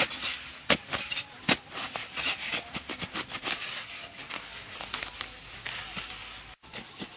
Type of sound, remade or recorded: recorded